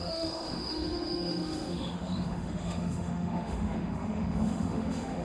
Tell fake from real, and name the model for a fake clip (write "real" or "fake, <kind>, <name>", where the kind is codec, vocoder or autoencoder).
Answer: fake, autoencoder, DAC-VAE